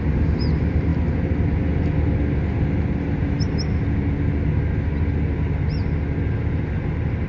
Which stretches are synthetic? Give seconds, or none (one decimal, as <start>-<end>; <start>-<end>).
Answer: 0.0-0.9; 5.3-7.3